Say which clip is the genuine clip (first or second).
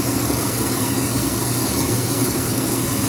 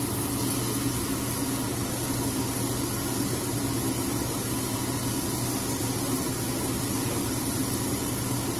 second